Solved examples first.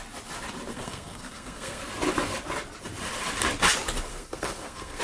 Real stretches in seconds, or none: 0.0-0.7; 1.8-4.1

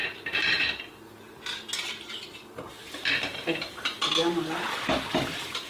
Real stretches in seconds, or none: 0.8-2.8; 4.0-5.7

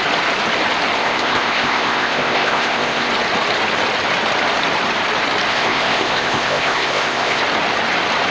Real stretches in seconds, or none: 0.0-1.0; 3.1-5.5; 7.4-8.3

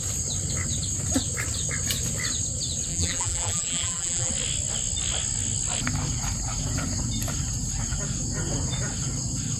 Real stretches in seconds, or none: 0.0-2.9; 4.3-9.6